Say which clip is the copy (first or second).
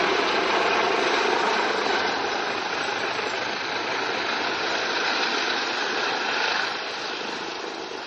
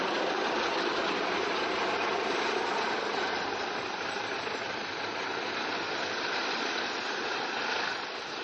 second